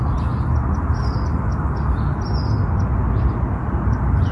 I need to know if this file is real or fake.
real